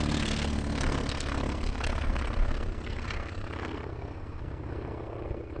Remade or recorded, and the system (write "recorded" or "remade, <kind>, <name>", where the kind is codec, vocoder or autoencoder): remade, codec, SNAC